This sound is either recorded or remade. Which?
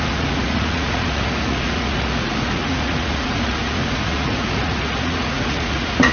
remade